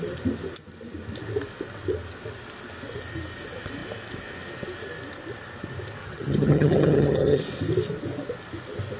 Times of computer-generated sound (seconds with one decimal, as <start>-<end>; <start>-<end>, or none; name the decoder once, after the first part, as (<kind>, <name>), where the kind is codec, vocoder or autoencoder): 6.0-7.4 (vocoder, HiFi-GAN)